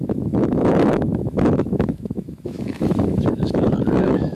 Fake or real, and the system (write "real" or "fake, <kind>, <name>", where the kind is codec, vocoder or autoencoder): fake, autoencoder, DAC-VAE